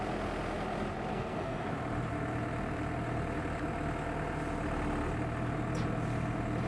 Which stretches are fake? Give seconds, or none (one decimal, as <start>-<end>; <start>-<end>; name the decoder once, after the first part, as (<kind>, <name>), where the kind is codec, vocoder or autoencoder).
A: 1.1-1.7 (codec, SNAC)